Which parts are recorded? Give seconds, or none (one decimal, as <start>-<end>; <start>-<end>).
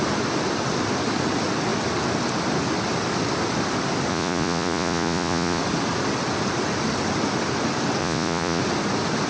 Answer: 0.0-4.1; 5.6-8.0; 8.6-9.3